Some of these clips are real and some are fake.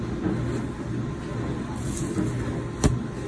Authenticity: real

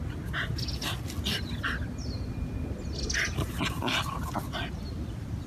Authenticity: real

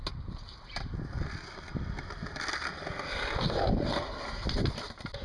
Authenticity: real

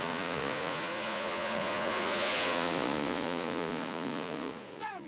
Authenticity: fake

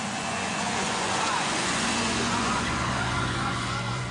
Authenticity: fake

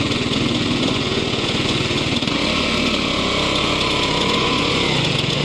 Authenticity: fake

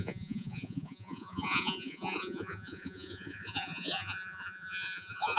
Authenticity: fake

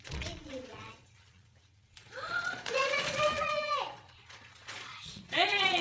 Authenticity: fake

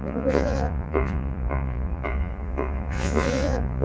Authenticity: fake